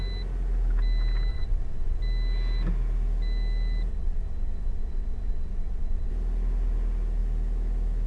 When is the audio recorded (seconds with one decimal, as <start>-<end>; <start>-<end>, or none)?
0.0-1.3; 2.0-3.9; 6.1-8.1